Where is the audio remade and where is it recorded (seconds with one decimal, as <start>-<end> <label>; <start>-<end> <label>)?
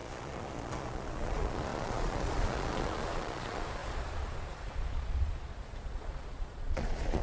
0.0-7.2 remade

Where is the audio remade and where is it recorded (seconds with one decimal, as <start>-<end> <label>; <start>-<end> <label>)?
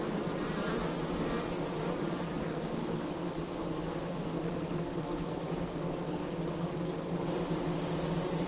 0.0-2.4 recorded; 2.4-7.2 remade; 7.2-8.5 recorded